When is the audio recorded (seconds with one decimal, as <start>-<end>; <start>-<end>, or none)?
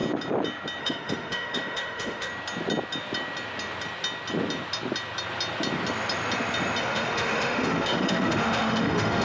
0.0-0.8; 2.3-6.8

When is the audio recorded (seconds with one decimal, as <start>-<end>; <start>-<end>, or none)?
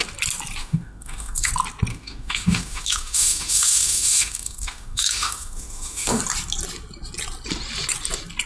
0.0-0.6; 1.5-1.9; 6.2-8.5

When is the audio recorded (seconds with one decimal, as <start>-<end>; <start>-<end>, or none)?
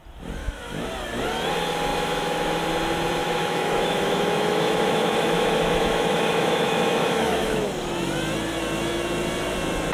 0.0-0.4; 0.9-1.9; 2.6-3.2; 7.7-9.9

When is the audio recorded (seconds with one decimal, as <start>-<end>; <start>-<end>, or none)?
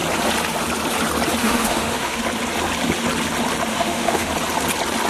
0.0-1.4; 2.2-3.7; 4.3-5.1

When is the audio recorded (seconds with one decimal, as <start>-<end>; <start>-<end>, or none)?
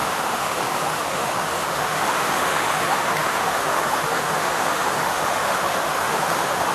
none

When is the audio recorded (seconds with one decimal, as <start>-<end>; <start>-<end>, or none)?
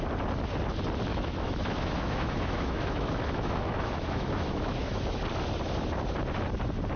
0.0-1.1; 5.2-7.0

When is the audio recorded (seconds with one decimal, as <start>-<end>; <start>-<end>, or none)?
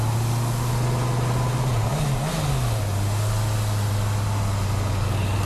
0.0-5.5